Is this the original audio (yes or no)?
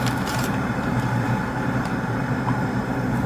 no